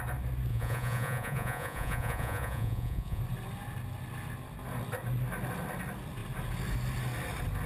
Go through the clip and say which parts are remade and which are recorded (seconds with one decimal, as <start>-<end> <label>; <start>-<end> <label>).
0.0-0.5 recorded; 0.5-3.2 remade; 3.2-7.7 recorded